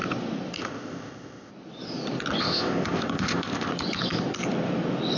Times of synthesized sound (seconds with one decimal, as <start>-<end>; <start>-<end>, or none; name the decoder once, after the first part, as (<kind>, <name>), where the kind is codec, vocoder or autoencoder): 0.6-1.5 (codec, ZipCodec); 2.4-3.7